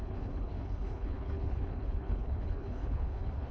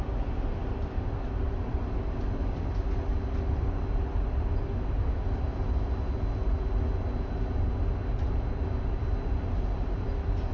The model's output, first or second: first